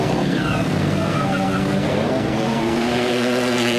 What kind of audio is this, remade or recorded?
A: remade